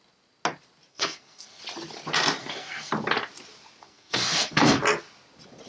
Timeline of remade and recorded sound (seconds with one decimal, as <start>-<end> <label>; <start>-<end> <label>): 0.0-0.9 recorded; 0.9-1.6 remade; 1.6-2.4 recorded; 2.4-2.9 remade; 2.9-3.8 recorded; 3.8-4.8 remade; 4.8-5.7 recorded